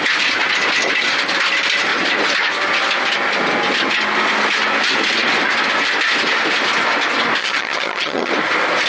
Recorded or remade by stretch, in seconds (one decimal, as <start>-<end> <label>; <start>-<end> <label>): 0.0-7.4 recorded; 7.4-8.3 remade; 8.3-8.9 recorded